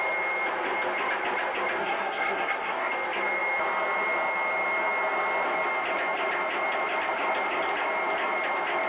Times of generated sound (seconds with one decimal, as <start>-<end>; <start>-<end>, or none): 1.8-2.9